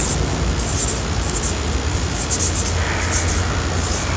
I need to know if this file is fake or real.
real